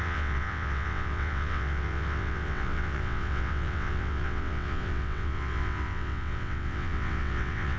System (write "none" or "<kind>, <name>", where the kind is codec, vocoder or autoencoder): vocoder, WaveNeXt